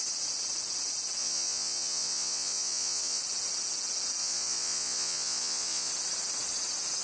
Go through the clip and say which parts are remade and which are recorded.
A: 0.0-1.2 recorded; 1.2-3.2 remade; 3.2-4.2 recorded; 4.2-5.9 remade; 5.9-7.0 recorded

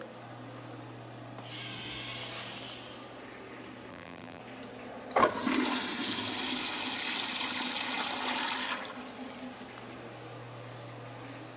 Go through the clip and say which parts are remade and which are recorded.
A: 0.0-3.9 recorded; 3.9-4.4 remade; 4.4-11.6 recorded

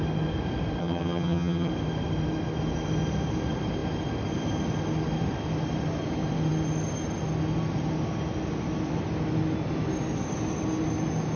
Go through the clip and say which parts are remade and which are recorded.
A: 0.0-0.8 recorded; 0.8-1.7 remade; 1.7-11.4 recorded

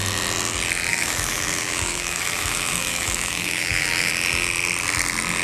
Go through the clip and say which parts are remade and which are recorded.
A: 0.0-0.9 recorded; 0.9-4.1 remade; 4.1-5.4 recorded

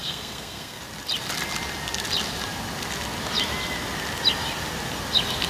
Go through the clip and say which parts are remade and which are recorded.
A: 0.0-0.8 remade; 0.8-5.5 recorded